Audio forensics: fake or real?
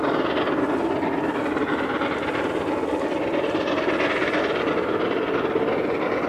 real